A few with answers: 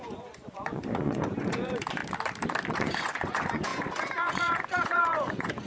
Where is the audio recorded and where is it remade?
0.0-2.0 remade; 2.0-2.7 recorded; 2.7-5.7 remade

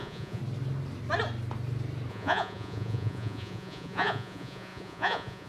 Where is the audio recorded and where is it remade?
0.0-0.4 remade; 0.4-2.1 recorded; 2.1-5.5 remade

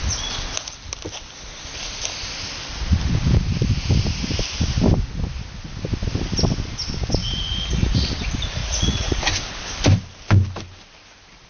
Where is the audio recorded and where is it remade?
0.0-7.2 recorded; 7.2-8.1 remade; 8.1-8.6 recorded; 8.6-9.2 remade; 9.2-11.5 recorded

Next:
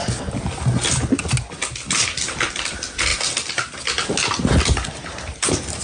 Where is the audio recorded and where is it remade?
0.0-5.8 recorded

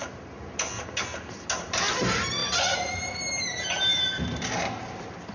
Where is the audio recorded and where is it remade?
0.0-5.3 recorded

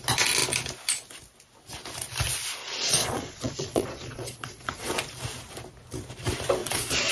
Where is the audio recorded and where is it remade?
0.0-2.6 recorded; 2.6-4.9 remade; 4.9-6.6 recorded; 6.6-7.1 remade

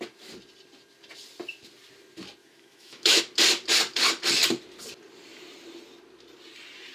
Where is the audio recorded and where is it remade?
0.0-2.4 recorded; 2.4-3.2 remade; 3.2-6.9 recorded

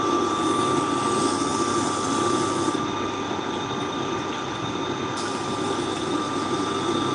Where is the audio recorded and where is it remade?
0.0-7.1 recorded